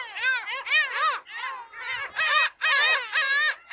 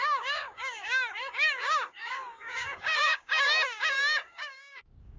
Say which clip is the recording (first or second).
first